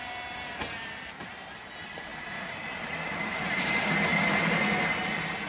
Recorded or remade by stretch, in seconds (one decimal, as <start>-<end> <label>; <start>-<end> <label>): 0.0-5.5 remade